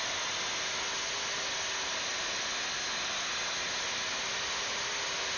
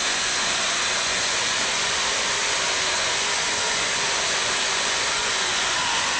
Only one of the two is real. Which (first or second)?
first